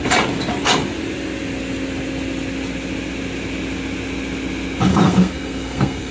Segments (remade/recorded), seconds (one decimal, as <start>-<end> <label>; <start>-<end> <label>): 0.0-4.9 recorded; 4.9-6.1 remade